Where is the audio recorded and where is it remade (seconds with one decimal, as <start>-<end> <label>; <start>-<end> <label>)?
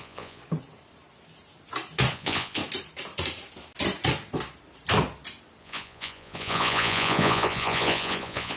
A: 0.0-0.4 remade; 0.4-2.1 recorded; 2.1-2.6 remade; 2.6-5.6 recorded; 5.6-8.6 remade